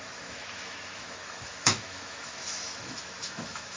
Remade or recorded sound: remade